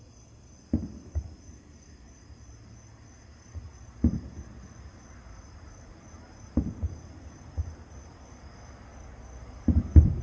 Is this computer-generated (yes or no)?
no